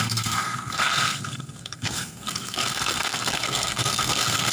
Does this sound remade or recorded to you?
remade